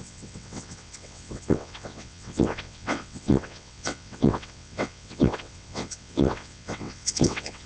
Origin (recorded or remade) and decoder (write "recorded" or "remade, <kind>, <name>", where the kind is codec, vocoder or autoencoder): remade, vocoder, WaveNeXt